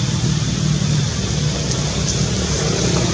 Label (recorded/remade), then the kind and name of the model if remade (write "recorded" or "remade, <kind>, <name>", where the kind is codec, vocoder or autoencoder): recorded